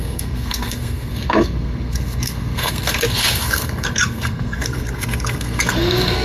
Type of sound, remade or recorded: remade